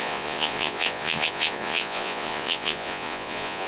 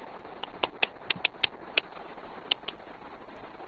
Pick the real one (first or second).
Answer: second